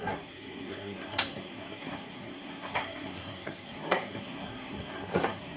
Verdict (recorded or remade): remade